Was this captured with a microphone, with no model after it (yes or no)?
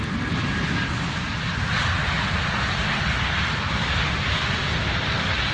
yes